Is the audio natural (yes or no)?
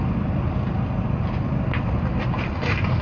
yes